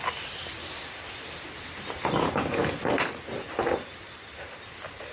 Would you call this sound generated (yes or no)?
no